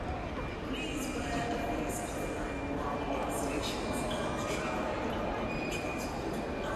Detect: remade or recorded recorded